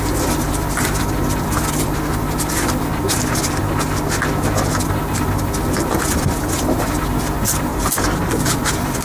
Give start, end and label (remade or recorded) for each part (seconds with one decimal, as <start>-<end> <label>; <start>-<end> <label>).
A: 0.0-2.9 remade; 2.9-4.8 recorded; 4.8-7.7 remade; 7.7-8.3 recorded; 8.3-9.0 remade